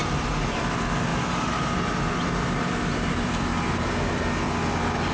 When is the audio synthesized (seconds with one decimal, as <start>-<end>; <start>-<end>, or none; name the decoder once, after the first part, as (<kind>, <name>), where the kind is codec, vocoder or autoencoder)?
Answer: 0.0-0.6 (vocoder, BigVGAN v2); 1.1-4.2